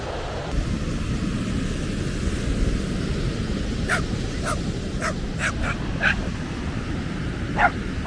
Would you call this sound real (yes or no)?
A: yes